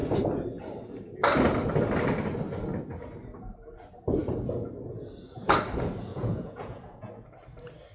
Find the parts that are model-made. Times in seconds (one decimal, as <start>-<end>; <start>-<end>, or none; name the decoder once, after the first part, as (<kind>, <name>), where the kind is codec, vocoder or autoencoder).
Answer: 6.1-7.1 (vocoder, Vocos)